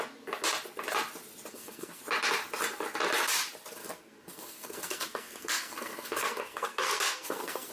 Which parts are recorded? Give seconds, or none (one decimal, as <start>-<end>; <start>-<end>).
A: 0.0-1.5; 2.0-3.8